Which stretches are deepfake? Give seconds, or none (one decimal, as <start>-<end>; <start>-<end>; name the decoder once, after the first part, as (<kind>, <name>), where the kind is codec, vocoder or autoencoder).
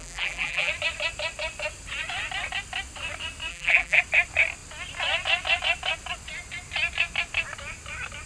0.0-0.7 (vocoder, BigVGAN v2); 3.5-4.0